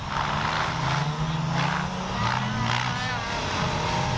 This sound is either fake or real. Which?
real